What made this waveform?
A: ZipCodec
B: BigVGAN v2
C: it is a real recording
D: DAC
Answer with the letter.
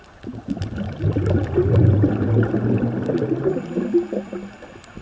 C